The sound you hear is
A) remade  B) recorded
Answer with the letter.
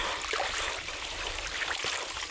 B